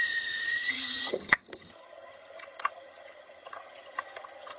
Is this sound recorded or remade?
remade